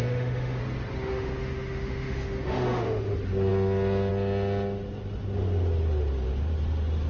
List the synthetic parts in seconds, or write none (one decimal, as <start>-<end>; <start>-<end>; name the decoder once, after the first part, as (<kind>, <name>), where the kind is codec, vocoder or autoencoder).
0.0-0.6 (autoencoder, DAC-VAE); 1.1-3.1